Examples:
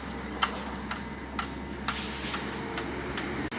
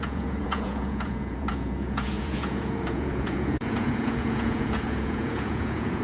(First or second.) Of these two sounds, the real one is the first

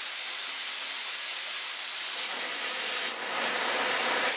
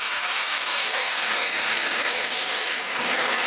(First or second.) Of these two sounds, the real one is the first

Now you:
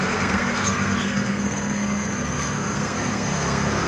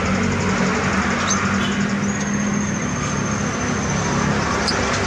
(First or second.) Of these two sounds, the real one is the second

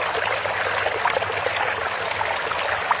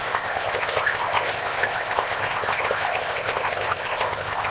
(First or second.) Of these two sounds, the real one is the first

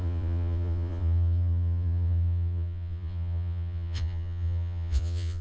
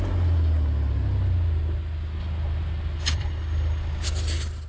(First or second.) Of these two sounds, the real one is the second